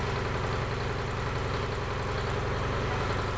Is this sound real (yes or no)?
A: yes